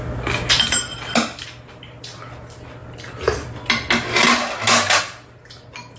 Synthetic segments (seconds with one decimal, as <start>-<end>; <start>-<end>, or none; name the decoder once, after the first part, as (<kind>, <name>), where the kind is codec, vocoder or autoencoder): none